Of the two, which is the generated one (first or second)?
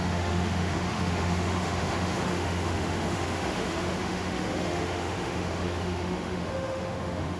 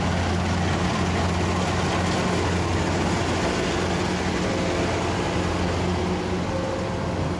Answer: first